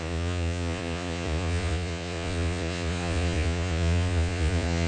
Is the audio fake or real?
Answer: fake